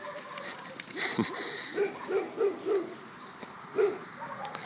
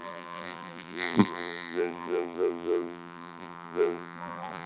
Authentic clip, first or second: first